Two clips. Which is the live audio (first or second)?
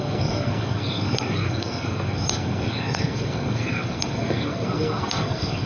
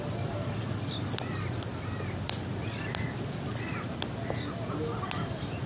second